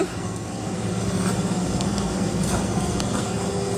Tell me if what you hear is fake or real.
fake